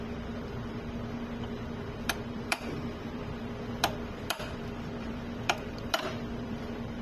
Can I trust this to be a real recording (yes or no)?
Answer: no